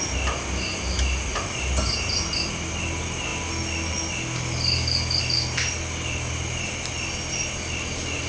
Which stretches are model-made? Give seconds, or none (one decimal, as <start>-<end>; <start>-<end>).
none